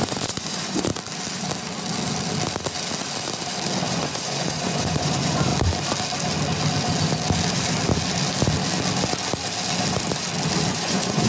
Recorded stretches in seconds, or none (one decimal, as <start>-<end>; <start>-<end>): 0.9-3.9; 5.5-10.7

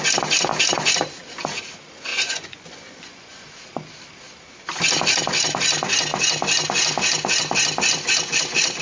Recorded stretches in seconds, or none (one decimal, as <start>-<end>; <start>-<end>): 0.0-2.1; 3.6-8.8

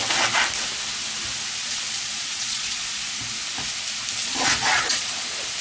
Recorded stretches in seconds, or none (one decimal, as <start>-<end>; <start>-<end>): 0.0-1.6; 3.2-4.2